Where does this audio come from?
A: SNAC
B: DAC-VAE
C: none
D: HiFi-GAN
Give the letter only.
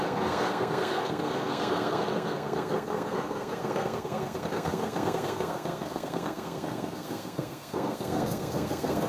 A